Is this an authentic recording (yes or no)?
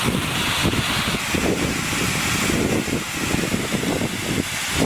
yes